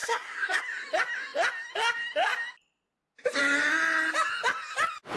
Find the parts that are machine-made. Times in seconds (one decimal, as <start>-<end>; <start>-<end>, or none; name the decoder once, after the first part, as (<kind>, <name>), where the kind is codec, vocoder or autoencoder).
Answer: 0.0-0.6 (codec, SNAC)